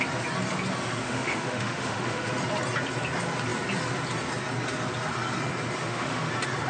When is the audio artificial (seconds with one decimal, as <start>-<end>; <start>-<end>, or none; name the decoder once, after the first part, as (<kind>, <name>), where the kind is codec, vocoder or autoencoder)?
1.0-2.3 (autoencoder, DAC-VAE); 5.8-6.3